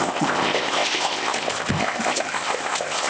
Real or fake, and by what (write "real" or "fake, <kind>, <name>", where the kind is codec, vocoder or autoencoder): fake, codec, ZipCodec